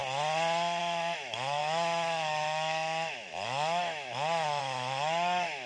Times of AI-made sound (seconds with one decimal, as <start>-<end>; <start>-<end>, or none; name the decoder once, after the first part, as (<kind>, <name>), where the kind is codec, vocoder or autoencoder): 0.8-5.7 (autoencoder, DAC-VAE)